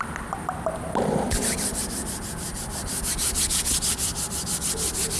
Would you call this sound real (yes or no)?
yes